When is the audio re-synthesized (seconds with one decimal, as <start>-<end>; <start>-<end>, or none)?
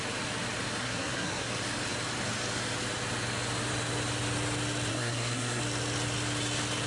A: 0.8-1.5; 4.9-5.6